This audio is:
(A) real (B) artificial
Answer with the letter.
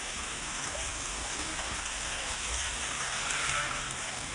B